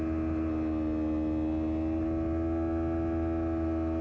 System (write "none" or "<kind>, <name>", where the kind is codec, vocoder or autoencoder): none